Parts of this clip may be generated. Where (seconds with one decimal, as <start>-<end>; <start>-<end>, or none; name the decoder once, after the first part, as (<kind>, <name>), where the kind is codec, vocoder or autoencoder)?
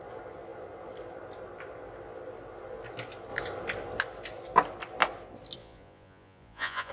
5.6-6.9 (vocoder, Vocos)